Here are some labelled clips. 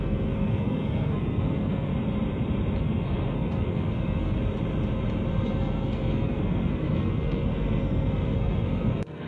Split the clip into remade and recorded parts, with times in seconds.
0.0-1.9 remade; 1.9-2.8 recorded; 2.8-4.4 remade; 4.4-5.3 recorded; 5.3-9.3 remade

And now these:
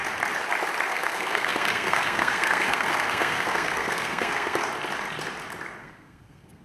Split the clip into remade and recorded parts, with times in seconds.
0.0-0.9 recorded; 0.9-4.6 remade; 4.6-5.8 recorded; 5.8-6.6 remade

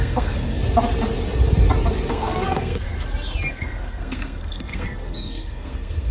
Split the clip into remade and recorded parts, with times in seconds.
0.0-0.6 remade; 0.6-2.1 recorded; 2.1-2.9 remade; 2.9-3.5 recorded; 3.5-6.1 remade

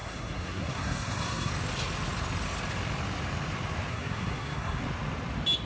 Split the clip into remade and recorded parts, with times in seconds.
0.0-1.5 remade; 1.5-3.9 recorded; 3.9-4.8 remade; 4.8-5.7 recorded

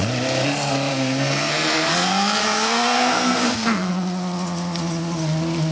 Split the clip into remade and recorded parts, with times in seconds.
0.0-0.9 recorded; 0.9-1.9 remade; 1.9-2.4 recorded; 2.4-3.9 remade; 3.9-5.7 recorded

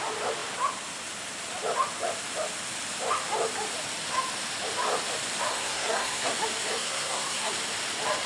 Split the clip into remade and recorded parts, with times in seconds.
0.0-5.5 recorded; 5.5-6.3 remade; 6.3-6.7 recorded; 6.7-7.5 remade; 7.5-8.3 recorded

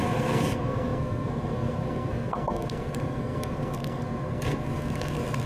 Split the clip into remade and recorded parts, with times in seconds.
0.0-5.5 remade